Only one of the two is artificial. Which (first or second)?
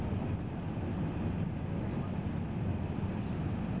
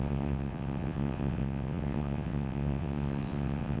second